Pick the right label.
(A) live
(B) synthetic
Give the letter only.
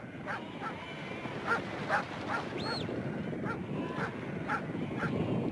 A